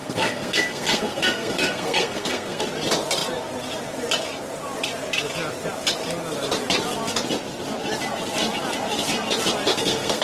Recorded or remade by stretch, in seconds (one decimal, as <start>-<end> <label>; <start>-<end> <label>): 0.0-2.6 remade; 2.6-9.7 recorded; 9.7-10.2 remade